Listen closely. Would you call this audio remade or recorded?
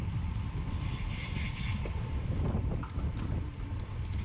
recorded